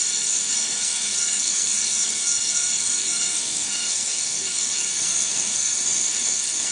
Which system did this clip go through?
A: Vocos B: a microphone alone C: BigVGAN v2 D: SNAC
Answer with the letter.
D